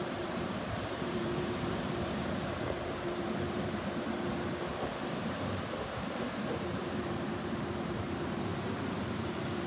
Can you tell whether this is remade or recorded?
remade